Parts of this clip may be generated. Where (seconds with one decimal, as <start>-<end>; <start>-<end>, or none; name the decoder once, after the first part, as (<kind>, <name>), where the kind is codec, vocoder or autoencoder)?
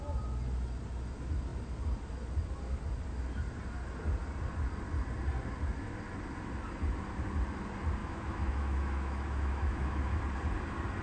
8.0-10.2 (autoencoder, DAC-VAE)